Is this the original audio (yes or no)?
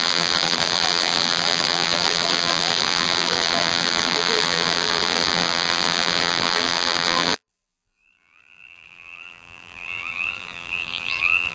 no